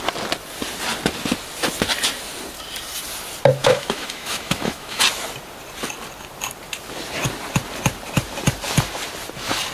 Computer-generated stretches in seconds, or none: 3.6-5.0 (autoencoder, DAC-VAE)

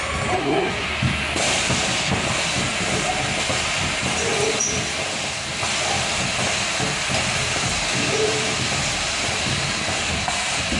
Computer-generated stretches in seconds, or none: 0.4-0.9 (codec, SNAC)